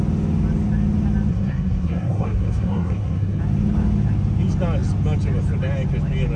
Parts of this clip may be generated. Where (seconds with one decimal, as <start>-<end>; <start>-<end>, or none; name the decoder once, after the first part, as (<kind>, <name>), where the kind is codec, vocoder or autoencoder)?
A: 1.3-3.4 (codec, SNAC)